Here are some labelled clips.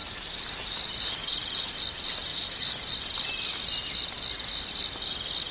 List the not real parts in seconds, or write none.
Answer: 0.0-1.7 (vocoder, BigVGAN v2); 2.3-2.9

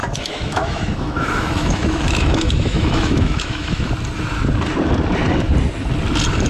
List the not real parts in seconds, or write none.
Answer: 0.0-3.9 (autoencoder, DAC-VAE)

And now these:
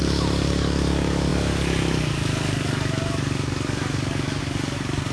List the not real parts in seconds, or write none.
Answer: 0.0-5.1 (codec, DAC)

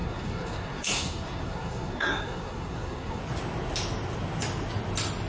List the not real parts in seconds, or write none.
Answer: 0.0-3.2 (codec, SNAC)